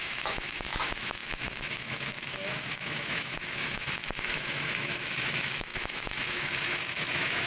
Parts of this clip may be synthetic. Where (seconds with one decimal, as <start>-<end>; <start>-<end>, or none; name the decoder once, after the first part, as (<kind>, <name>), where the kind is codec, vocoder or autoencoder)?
0.0-7.5 (autoencoder, DAC-VAE)

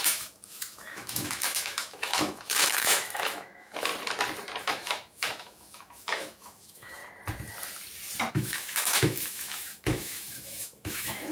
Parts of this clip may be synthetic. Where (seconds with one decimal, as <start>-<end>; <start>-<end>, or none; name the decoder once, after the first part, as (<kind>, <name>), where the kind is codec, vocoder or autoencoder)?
0.0-3.9 (autoencoder, DAC-VAE); 4.6-7.0; 8.3-11.3

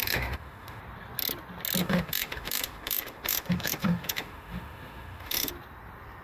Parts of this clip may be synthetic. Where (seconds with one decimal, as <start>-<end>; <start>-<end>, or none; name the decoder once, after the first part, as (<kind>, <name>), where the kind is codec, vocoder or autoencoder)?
0.0-0.8 (autoencoder, DAC-VAE); 1.8-5.5

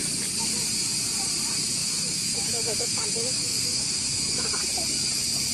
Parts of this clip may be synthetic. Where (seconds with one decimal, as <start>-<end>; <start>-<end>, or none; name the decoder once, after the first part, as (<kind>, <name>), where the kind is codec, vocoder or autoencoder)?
1.8-4.6 (autoencoder, DAC-VAE)

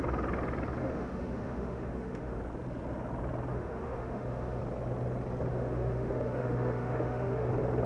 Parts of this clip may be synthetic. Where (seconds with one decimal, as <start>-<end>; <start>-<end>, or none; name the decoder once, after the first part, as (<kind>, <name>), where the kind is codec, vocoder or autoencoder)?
0.8-2.4 (autoencoder, DAC-VAE); 3.5-4.6; 5.5-7.5

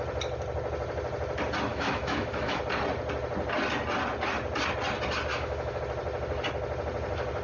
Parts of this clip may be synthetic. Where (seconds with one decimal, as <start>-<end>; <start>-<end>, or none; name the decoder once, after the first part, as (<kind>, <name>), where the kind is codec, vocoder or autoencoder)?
1.7-2.6 (autoencoder, DAC-VAE); 5.3-5.8

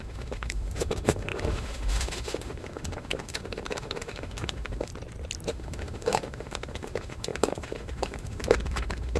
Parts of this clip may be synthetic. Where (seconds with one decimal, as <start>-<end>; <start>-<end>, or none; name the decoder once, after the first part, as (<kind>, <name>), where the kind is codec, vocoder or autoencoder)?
0.0-4.9 (autoencoder, DAC-VAE); 5.5-9.2